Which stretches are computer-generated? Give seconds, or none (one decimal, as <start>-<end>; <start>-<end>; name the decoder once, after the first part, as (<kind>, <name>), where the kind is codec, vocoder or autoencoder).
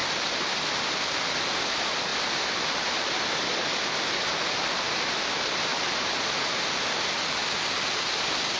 none